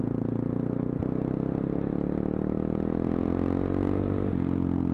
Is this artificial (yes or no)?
no